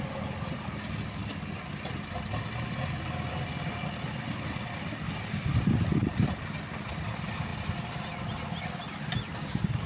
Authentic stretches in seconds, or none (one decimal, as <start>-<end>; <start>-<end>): 0.0-9.9